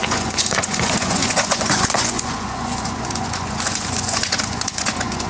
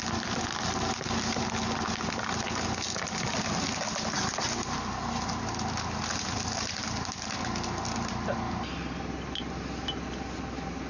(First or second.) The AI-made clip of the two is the first